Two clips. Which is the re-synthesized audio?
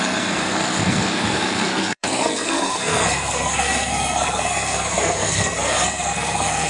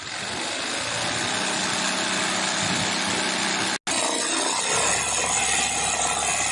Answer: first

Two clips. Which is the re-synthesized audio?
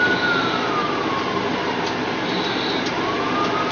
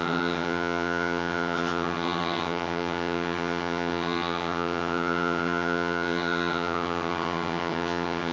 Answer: second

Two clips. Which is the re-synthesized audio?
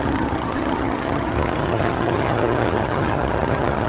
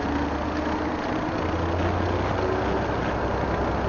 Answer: first